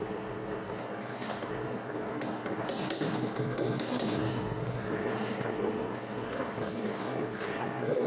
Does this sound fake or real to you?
fake